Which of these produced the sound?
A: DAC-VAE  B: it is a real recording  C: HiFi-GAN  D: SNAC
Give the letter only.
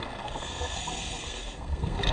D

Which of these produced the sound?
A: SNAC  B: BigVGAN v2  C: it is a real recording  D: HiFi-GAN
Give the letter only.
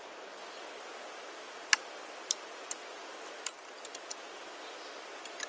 C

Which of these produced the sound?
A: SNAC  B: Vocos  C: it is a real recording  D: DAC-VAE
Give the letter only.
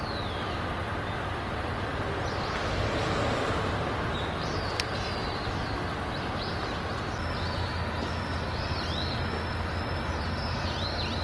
C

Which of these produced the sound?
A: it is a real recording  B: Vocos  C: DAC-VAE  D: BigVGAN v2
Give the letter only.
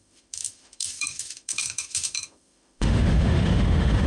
C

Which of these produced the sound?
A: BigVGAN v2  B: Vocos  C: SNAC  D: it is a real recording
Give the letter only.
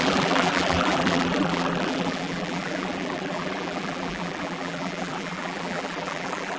A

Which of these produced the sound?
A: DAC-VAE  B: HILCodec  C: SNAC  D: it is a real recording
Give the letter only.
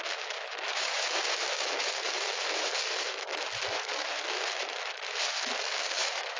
A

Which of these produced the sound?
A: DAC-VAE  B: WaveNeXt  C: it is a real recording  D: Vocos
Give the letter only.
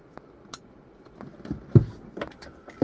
C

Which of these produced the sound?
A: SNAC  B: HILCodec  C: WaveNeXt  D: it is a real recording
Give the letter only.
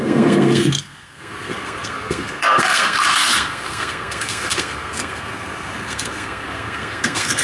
A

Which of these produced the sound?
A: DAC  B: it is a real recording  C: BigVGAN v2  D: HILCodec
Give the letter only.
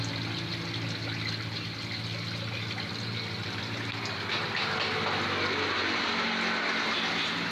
B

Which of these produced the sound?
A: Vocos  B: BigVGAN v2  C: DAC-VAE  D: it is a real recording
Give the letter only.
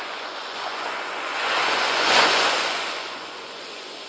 A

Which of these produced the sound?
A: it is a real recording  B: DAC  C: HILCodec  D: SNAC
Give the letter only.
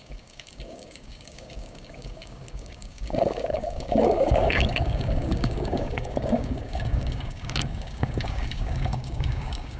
B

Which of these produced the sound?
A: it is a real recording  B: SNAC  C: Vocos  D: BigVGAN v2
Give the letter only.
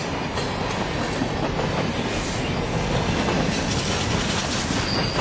A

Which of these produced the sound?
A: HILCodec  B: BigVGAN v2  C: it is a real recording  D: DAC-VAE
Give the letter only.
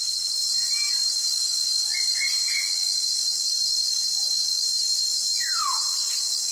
C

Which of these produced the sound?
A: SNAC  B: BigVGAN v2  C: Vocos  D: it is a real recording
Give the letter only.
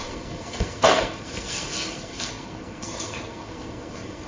A